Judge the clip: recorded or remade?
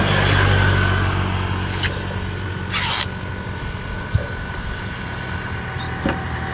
recorded